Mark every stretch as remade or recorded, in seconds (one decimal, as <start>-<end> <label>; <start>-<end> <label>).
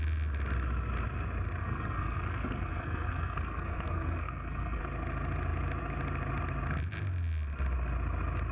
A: 0.0-1.6 recorded; 1.6-4.8 remade; 4.8-8.5 recorded